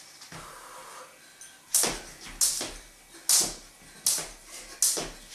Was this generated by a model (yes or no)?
no